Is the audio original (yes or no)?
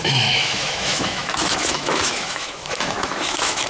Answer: no